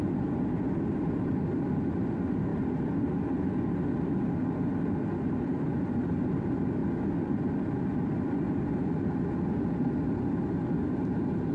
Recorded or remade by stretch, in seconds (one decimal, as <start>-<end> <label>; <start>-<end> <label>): 0.0-6.8 remade; 6.8-9.8 recorded; 9.8-11.5 remade